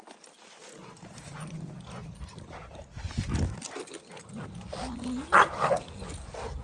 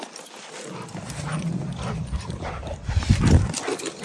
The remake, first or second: second